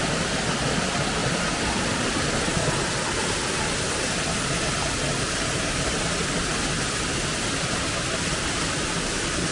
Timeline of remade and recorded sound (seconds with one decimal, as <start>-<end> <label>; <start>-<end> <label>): 0.0-9.5 recorded